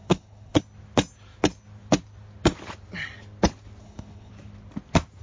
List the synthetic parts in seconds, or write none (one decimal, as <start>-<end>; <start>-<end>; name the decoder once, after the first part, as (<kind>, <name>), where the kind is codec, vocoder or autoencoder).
0.0-0.6 (codec, HILCodec); 3.8-4.3